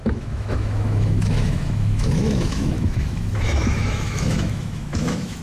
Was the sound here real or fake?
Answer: fake